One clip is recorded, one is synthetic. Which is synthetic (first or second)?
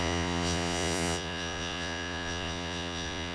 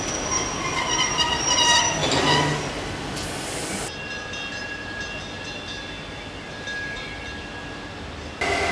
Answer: first